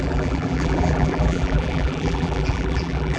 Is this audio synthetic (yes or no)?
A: yes